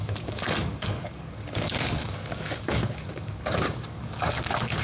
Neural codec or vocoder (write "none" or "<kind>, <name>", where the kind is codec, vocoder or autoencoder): codec, DAC